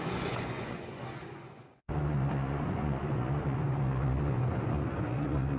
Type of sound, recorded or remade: remade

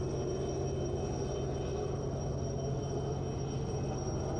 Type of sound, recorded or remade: recorded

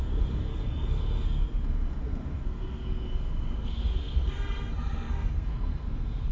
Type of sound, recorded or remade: remade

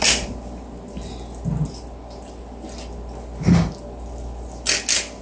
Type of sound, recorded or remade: recorded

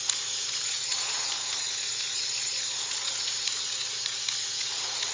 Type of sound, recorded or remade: remade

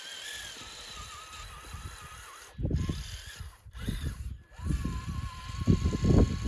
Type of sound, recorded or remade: recorded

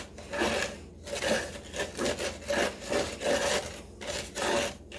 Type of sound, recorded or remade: recorded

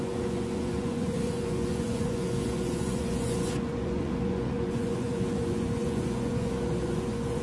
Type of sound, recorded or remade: remade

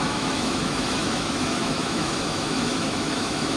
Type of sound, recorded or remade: remade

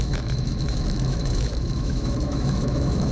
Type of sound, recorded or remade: remade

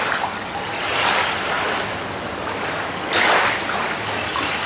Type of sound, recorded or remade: recorded